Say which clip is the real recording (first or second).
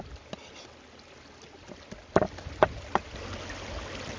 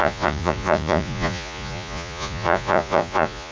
first